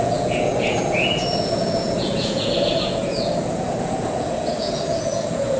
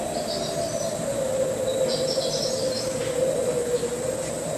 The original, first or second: second